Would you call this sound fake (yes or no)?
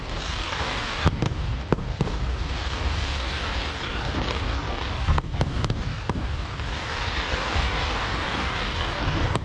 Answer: yes